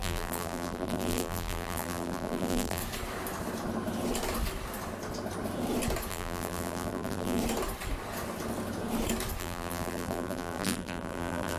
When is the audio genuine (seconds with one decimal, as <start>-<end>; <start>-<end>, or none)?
2.8-6.1; 7.4-9.4